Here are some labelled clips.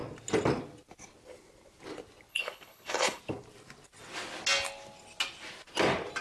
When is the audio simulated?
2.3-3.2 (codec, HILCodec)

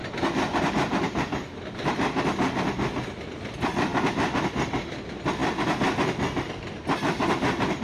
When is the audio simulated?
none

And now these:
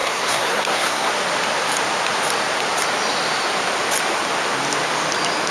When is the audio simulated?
0.0-1.1 (codec, SNAC)

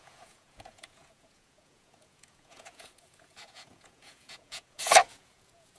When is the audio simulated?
0.0-5.8 (vocoder, Vocos)